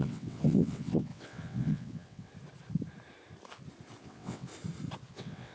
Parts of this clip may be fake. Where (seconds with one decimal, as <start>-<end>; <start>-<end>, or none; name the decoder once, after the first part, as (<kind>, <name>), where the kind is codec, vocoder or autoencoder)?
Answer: 0.0-2.3 (vocoder, WaveNeXt); 4.0-4.5; 5.1-5.5